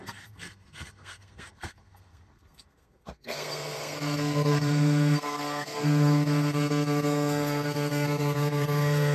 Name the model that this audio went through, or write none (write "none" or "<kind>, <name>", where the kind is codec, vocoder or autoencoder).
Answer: codec, SNAC